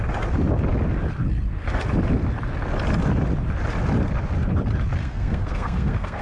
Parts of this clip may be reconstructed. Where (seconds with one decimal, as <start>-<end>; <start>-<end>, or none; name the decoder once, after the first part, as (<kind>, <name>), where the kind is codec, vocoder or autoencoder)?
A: 5.0-6.2 (codec, SNAC)